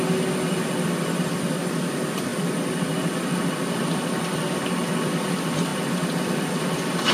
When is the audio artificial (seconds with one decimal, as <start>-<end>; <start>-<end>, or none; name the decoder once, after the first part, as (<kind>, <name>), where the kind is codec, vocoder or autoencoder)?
none